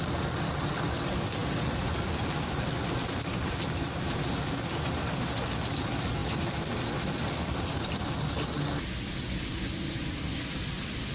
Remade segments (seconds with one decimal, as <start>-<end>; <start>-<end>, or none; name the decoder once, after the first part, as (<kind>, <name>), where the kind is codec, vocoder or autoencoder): none